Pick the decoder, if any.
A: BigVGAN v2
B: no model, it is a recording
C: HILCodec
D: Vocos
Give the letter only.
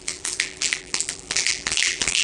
A